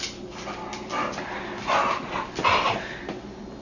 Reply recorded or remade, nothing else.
recorded